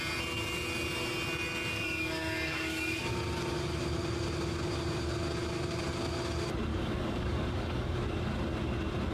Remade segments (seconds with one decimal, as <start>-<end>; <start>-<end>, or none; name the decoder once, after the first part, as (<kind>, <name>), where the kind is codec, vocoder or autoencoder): 1.7-3.1 (codec, DAC); 6.7-8.0